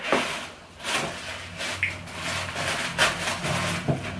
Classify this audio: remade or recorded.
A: recorded